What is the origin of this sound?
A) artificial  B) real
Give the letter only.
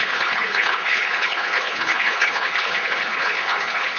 A